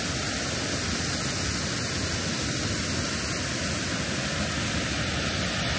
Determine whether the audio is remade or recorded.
recorded